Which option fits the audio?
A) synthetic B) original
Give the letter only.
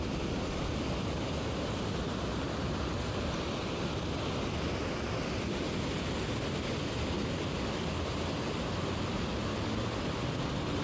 B